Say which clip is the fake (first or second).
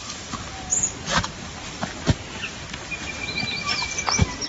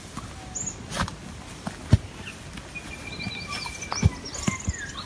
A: first